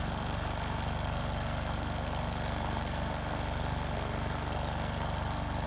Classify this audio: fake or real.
fake